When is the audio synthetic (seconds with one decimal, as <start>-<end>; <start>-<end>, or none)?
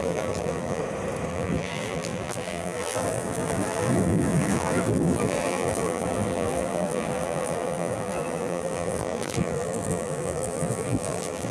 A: 0.0-0.8; 1.3-11.5